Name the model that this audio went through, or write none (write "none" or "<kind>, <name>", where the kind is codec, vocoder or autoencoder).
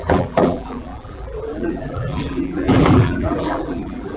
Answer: vocoder, BigVGAN v2